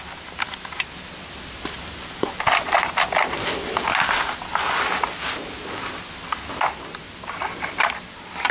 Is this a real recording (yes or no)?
yes